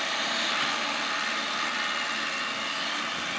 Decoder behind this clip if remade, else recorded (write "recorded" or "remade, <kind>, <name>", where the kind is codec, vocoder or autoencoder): recorded